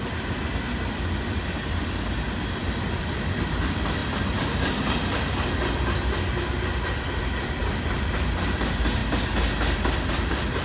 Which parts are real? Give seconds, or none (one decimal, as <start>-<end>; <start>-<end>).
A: 0.0-10.6